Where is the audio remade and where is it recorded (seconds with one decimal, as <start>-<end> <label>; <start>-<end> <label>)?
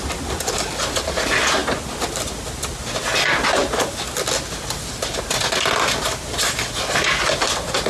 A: 0.0-7.9 recorded